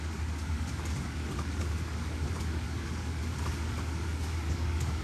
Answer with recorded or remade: remade